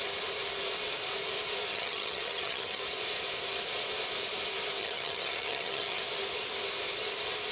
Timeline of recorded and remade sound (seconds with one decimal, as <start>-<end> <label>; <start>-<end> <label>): 0.0-1.7 recorded; 1.7-2.8 remade; 2.8-4.8 recorded; 4.8-6.0 remade; 6.0-7.5 recorded